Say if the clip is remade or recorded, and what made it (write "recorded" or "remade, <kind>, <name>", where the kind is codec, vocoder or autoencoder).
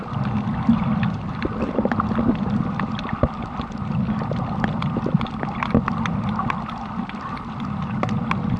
recorded